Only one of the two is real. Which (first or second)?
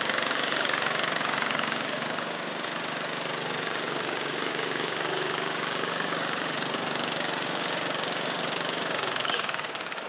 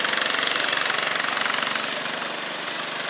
second